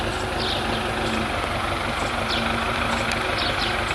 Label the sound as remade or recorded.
recorded